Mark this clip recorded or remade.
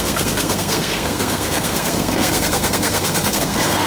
remade